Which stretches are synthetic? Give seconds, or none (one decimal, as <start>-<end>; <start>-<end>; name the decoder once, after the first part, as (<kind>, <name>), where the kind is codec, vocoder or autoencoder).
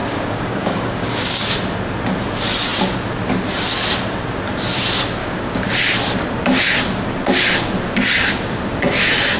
0.0-1.4 (codec, DAC); 5.2-5.7